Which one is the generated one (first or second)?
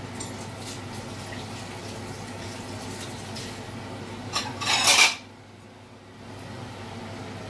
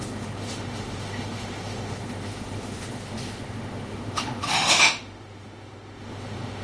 second